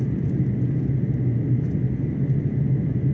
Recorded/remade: recorded